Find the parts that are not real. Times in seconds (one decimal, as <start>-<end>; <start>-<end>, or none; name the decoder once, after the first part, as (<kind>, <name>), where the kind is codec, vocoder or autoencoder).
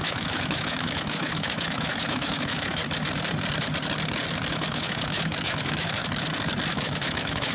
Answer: 0.0-2.8 (autoencoder, DAC-VAE); 4.5-6.0; 6.7-7.5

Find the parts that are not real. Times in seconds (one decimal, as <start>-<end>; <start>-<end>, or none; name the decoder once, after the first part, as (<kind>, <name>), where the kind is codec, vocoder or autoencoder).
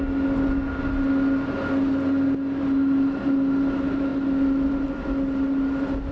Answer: none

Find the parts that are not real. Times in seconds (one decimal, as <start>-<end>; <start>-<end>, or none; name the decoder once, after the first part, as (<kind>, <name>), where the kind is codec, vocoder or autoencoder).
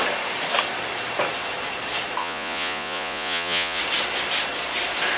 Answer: 2.2-3.8 (vocoder, Vocos)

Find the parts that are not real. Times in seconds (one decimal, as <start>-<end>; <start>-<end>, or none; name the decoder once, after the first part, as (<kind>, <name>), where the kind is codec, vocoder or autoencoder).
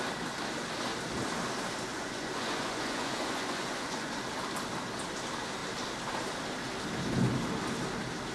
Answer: 1.9-4.1 (vocoder, Vocos)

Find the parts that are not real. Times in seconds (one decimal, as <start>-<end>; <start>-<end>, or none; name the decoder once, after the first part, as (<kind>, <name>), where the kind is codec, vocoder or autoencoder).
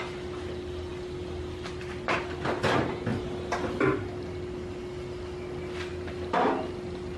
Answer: none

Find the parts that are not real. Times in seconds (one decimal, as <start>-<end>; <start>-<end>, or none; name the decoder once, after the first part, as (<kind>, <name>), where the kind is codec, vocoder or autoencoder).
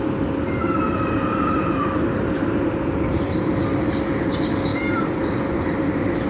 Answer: 0.6-3.6 (vocoder, BigVGAN v2); 4.7-6.3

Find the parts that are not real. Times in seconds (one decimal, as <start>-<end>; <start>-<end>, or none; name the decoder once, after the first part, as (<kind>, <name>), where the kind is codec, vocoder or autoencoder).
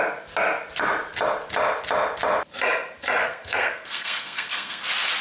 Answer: 3.2-4.8 (codec, SNAC)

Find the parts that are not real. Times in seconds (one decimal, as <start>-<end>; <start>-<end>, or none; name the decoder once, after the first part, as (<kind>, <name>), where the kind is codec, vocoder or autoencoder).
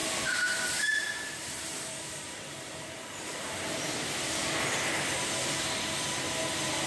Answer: 0.0-3.7 (vocoder, BigVGAN v2)